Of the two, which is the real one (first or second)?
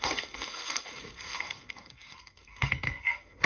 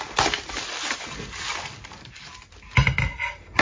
second